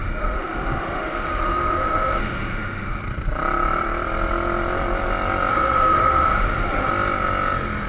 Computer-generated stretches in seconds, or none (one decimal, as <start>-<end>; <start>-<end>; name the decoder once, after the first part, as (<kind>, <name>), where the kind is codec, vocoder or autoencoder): 0.0-3.0 (autoencoder, DAC-VAE); 5.5-6.9